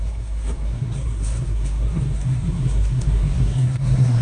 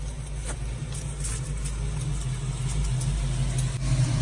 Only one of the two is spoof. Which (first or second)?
first